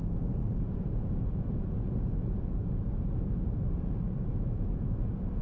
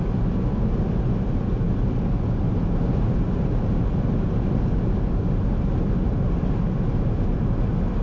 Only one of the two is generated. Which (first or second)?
first